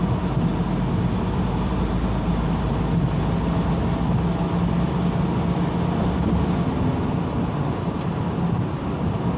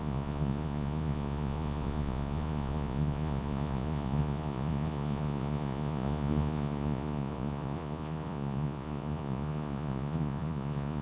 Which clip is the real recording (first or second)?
first